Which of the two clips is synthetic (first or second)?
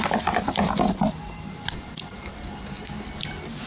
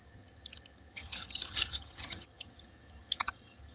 second